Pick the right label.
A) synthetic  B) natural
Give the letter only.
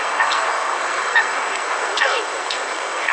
A